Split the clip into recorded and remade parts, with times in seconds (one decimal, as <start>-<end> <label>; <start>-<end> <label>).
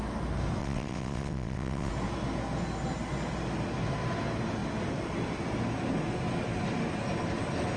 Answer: 0.0-0.6 recorded; 0.6-1.9 remade; 1.9-7.8 recorded